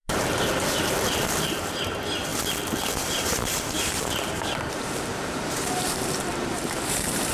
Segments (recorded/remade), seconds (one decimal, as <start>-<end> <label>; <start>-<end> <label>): 0.0-2.3 remade; 2.3-2.9 recorded; 2.9-7.3 remade